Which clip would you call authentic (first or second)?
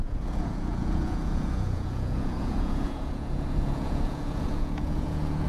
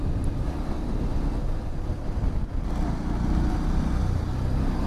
second